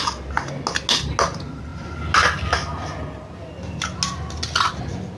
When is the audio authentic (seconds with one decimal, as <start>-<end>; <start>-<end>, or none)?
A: 0.0-5.2